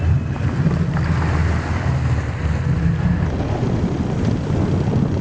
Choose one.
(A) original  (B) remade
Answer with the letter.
A